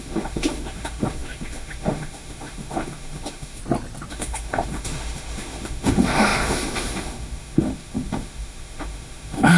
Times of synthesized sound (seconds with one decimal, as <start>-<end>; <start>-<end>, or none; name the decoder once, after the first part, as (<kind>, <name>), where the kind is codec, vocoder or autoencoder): 0.0-3.6 (autoencoder, DAC-VAE); 4.1-9.6